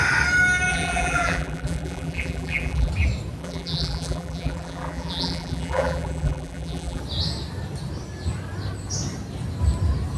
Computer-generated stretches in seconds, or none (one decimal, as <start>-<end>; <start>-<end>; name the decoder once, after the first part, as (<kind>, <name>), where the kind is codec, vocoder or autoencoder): 0.7-2.9 (vocoder, BigVGAN v2); 3.4-7.0